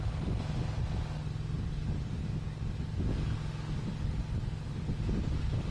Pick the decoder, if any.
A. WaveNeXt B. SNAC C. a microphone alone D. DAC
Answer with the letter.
C